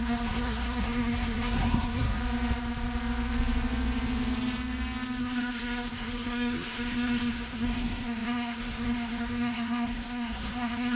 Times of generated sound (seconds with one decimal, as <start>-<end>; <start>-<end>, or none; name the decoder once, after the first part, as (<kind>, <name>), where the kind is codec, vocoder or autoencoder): 0.0-2.2 (codec, SNAC); 5.2-11.0

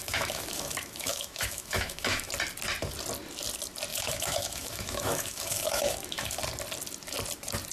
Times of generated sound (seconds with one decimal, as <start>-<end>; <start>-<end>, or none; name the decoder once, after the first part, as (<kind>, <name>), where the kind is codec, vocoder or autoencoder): 0.0-2.3 (autoencoder, DAC-VAE); 3.9-6.4

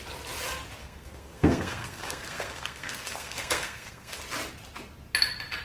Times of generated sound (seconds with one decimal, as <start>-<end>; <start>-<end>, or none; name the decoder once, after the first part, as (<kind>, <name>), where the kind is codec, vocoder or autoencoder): 0.8-4.2 (codec, SNAC)

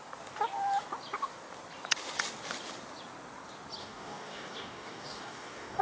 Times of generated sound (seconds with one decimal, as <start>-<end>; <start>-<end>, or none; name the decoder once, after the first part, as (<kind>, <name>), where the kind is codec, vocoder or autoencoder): 3.8-5.8 (codec, DAC)